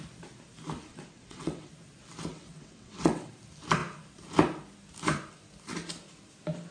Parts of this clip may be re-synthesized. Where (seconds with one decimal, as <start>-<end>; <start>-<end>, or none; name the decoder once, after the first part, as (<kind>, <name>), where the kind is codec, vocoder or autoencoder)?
0.9-1.7 (vocoder, WaveNeXt); 2.3-3.3